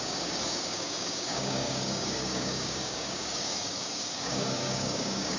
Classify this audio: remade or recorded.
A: remade